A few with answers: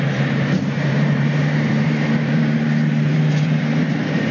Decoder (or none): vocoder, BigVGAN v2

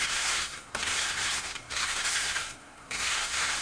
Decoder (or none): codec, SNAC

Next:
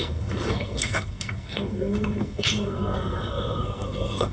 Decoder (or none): codec, SNAC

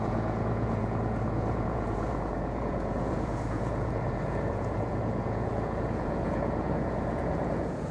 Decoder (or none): vocoder, Vocos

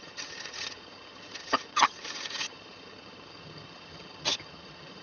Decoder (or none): vocoder, HiFi-GAN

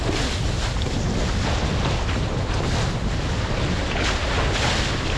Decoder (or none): none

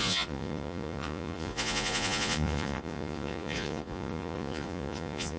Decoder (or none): vocoder, Vocos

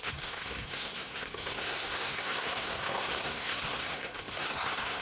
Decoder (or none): codec, SNAC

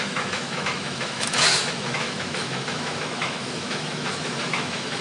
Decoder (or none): autoencoder, DAC-VAE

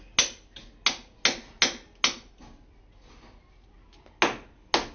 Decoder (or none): none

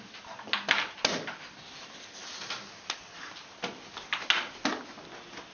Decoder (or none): none